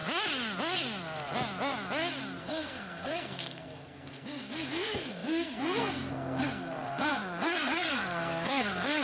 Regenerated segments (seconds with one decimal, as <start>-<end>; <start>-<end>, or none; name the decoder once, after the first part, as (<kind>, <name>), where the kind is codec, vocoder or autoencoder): 2.4-9.0 (codec, SNAC)